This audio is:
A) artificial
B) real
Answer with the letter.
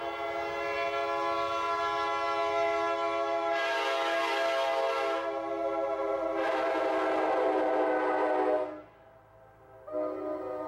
B